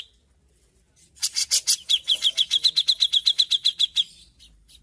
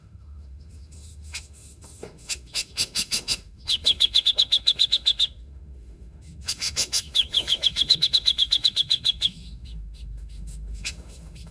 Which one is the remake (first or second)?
second